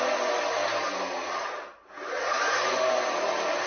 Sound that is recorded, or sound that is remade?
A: recorded